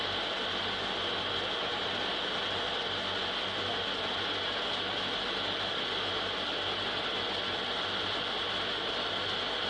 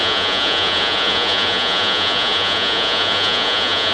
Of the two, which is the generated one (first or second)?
second